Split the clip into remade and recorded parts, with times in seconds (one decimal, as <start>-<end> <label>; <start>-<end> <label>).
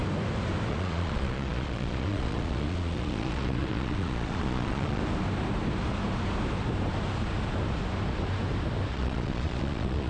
0.0-0.7 recorded; 0.7-5.0 remade; 5.0-8.9 recorded; 8.9-10.1 remade